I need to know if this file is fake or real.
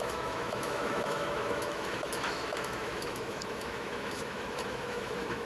fake